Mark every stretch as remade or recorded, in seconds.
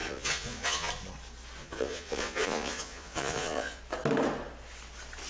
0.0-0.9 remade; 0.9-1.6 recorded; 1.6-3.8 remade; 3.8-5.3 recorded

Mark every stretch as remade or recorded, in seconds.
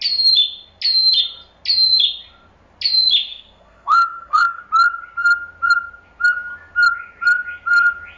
0.0-3.3 recorded; 3.3-4.6 remade; 4.6-8.2 recorded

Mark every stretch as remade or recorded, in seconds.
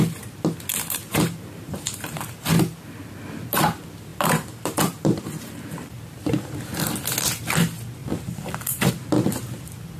0.0-0.7 recorded; 0.7-2.3 remade; 2.3-4.1 recorded; 4.1-6.0 remade; 6.0-8.0 recorded; 8.0-8.9 remade; 8.9-10.0 recorded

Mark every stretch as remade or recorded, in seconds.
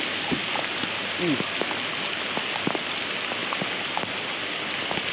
0.0-5.1 recorded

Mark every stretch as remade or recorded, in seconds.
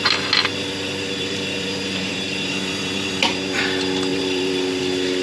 0.0-0.5 recorded; 0.5-3.6 remade; 3.6-4.1 recorded; 4.1-4.8 remade; 4.8-5.2 recorded